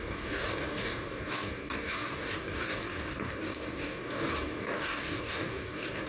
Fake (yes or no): yes